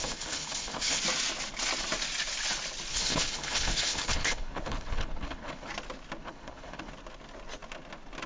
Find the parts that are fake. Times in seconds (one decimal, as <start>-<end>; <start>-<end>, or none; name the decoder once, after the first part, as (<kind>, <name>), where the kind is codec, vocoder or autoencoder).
0.0-1.0 (codec, HILCodec); 2.9-5.7; 6.2-6.9